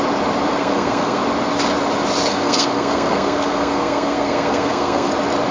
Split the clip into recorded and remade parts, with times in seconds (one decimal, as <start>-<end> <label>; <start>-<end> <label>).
0.0-0.5 recorded; 0.5-1.2 remade; 1.2-2.3 recorded; 2.3-5.1 remade; 5.1-5.5 recorded